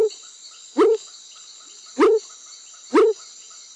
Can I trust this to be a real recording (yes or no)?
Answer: yes